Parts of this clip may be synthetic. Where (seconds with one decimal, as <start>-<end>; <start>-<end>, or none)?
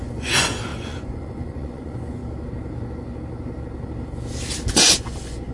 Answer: 0.0-2.2; 4.7-5.5